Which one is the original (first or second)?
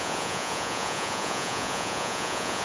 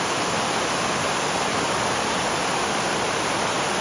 second